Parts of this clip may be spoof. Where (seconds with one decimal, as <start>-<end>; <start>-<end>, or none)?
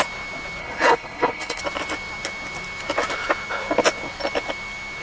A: 0.6-1.6